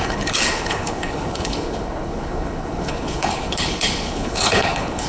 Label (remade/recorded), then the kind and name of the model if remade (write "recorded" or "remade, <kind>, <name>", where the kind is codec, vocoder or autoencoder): remade, codec, HILCodec